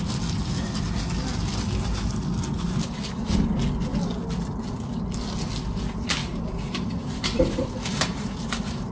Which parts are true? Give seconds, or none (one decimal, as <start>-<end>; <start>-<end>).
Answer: 0.0-6.2